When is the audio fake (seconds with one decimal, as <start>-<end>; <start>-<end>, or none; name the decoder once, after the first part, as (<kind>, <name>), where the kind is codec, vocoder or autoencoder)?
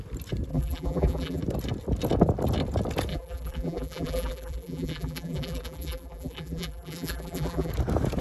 0.5-1.4 (vocoder, BigVGAN v2); 3.1-7.7